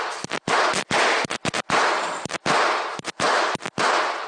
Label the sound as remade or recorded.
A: remade